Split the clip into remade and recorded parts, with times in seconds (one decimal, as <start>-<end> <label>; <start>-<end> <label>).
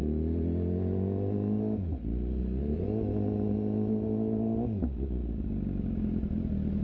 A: 0.0-6.8 recorded